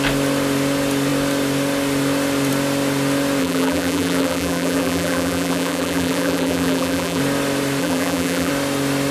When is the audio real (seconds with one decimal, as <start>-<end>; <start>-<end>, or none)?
0.0-3.4; 7.2-7.8; 8.5-9.1